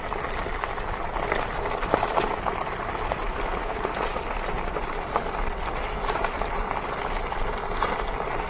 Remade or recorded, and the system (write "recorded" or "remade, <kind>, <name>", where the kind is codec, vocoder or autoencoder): recorded